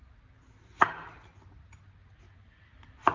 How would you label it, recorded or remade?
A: recorded